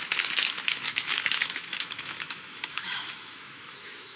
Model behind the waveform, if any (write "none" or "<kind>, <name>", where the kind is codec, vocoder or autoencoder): autoencoder, DAC-VAE